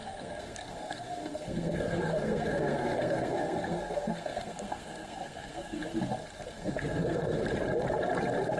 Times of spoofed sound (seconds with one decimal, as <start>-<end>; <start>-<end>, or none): 0.0-5.8; 6.5-7.4